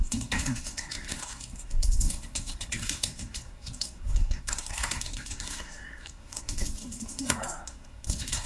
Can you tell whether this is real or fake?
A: fake